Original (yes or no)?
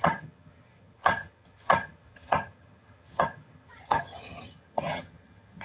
no